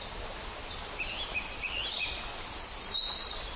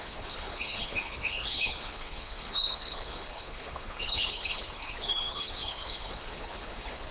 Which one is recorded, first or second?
first